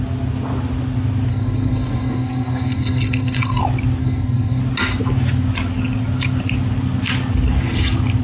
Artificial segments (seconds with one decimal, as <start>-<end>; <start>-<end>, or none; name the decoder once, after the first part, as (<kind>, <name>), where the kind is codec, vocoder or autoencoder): 1.3-3.6 (codec, SNAC); 4.0-4.6